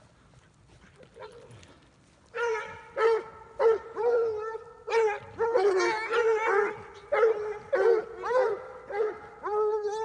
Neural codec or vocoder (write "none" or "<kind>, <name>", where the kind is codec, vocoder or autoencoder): none